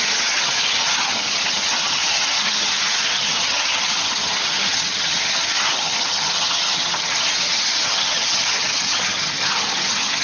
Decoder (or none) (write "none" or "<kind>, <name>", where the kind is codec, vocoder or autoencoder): vocoder, HiFi-GAN